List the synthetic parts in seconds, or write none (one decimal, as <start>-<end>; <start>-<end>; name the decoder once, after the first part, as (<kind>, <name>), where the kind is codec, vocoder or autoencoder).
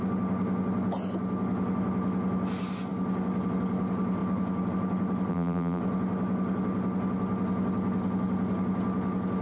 5.3-5.8 (vocoder, BigVGAN v2)